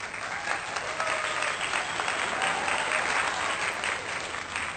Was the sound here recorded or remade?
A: recorded